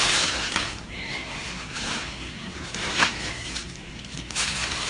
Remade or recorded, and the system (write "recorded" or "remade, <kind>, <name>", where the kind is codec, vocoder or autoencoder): remade, codec, SNAC